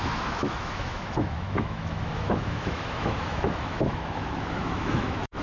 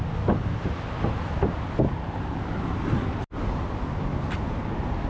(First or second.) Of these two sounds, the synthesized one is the first